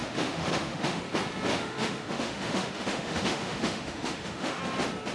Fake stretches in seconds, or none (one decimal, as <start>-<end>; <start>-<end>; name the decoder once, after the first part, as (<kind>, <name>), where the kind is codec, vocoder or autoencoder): 0.0-1.0 (autoencoder, DAC-VAE); 1.5-4.6

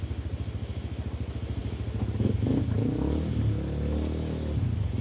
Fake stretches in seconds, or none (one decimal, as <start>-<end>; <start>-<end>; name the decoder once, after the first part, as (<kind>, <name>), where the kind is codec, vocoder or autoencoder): none